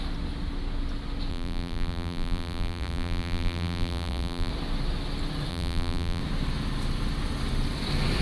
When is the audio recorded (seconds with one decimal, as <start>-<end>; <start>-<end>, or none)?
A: 0.0-1.3; 4.5-5.5; 6.2-8.2